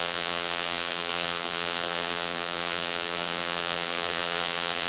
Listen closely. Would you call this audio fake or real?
fake